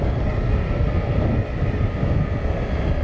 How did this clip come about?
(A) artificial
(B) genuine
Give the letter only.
B